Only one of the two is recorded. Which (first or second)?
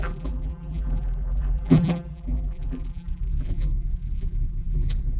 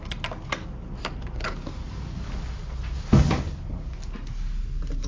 second